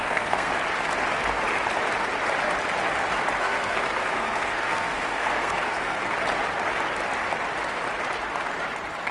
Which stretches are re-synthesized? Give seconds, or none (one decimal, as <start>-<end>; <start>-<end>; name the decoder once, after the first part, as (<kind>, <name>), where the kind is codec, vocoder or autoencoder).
0.0-0.5 (codec, SNAC); 3.4-6.0